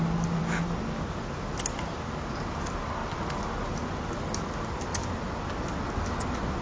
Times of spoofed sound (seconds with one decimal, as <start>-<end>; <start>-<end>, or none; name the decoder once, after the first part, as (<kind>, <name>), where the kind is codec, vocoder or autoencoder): none